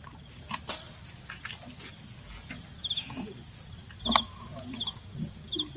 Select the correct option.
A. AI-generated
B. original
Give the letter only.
B